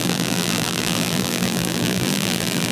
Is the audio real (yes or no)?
no